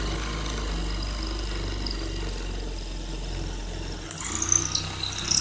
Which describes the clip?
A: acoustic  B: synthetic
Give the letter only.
A